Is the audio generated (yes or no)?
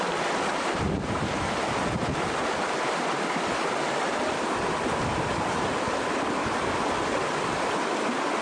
no